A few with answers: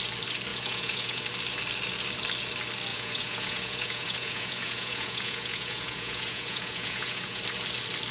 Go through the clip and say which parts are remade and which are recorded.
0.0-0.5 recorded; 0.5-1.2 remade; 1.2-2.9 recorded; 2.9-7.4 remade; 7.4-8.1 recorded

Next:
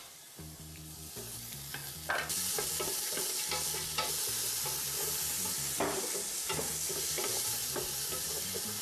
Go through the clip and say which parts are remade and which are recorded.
0.0-7.6 recorded; 7.6-8.8 remade

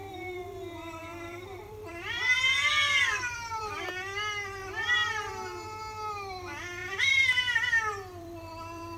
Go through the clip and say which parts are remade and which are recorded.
0.0-3.9 remade; 3.9-4.6 recorded; 4.6-5.3 remade; 5.3-6.8 recorded; 6.8-9.0 remade

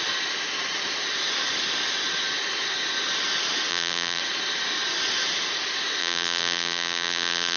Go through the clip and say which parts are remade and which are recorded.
0.0-3.7 recorded; 3.7-4.2 remade; 4.2-6.0 recorded; 6.0-7.6 remade

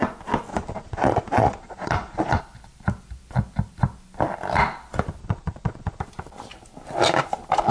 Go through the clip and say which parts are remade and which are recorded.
0.0-0.5 recorded; 0.5-2.4 remade; 2.4-5.2 recorded; 5.2-6.0 remade; 6.0-7.7 recorded

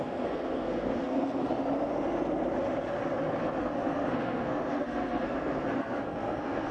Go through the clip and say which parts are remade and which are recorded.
0.0-1.5 remade; 1.5-3.6 recorded; 3.6-6.7 remade